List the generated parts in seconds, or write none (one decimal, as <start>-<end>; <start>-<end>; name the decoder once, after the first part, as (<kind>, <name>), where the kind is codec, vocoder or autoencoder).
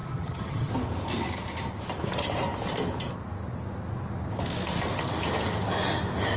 0.0-0.7 (vocoder, HiFi-GAN)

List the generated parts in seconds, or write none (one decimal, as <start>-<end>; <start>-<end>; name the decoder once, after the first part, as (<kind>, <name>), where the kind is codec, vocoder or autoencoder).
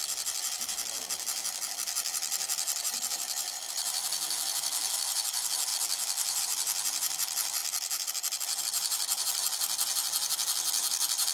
0.0-7.6 (vocoder, BigVGAN v2); 8.6-11.3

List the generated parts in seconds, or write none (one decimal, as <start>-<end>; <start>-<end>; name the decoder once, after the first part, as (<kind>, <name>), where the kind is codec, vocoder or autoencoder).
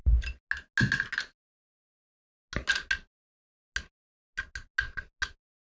none